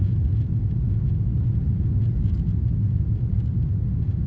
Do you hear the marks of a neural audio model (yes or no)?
no